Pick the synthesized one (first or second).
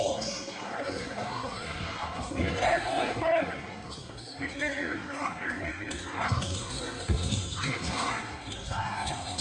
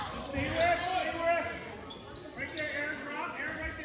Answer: first